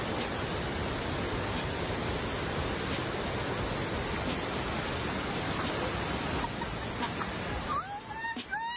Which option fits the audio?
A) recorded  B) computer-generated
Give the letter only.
A